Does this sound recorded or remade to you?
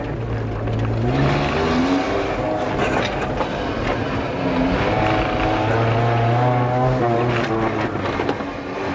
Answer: recorded